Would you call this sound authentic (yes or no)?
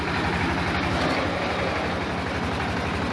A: yes